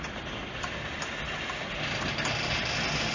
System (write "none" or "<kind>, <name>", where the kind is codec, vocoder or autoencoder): none